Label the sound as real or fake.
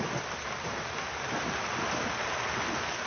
real